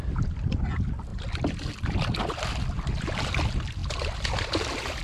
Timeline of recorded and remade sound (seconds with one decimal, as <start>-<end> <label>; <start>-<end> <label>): 0.0-5.0 recorded